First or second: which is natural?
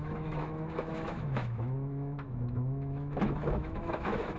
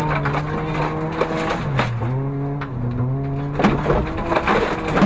second